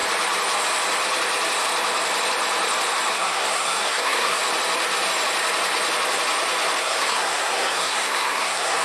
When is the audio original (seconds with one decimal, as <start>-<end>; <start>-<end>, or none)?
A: 0.0-3.1; 4.4-6.8